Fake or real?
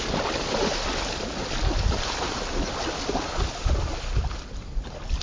real